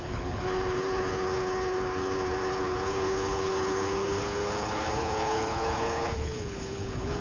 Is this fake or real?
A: fake